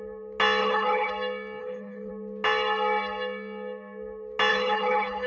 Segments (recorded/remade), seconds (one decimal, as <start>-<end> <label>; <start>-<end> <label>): 0.0-0.6 recorded; 0.6-1.1 remade; 1.1-1.6 recorded; 1.6-2.1 remade; 2.1-4.5 recorded; 4.5-5.3 remade